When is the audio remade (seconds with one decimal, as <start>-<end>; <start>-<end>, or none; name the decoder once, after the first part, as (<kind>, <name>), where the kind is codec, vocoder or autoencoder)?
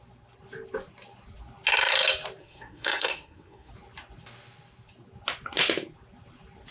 2.4-3.7 (codec, SNAC)